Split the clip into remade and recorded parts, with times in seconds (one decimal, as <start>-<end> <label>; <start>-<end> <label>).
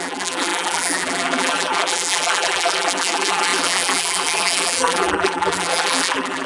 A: 0.0-6.5 remade